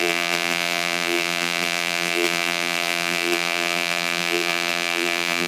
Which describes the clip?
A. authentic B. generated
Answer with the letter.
B